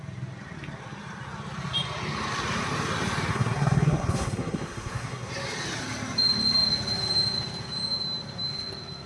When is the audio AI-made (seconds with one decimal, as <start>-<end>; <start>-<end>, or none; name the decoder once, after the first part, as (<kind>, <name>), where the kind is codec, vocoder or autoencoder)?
3.3-5.3 (codec, SNAC)